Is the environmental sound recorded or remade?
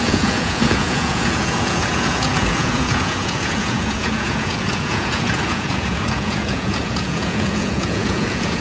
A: remade